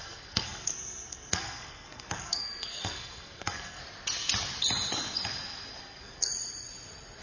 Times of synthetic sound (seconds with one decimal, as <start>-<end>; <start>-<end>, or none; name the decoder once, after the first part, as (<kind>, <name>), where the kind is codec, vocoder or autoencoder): 0.0-3.8 (codec, SNAC); 5.8-6.3